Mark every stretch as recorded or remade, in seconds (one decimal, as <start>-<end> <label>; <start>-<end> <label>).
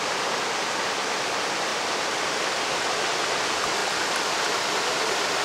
0.0-1.7 recorded; 1.7-2.4 remade; 2.4-3.8 recorded; 3.8-5.4 remade